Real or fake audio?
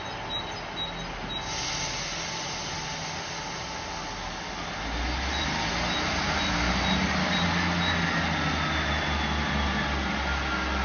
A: real